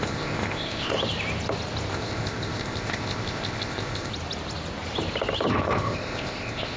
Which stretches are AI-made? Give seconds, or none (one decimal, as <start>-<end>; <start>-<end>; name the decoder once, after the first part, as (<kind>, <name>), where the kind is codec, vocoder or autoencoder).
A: 0.0-0.9 (codec, ZipCodec); 1.9-4.1; 5.5-6.8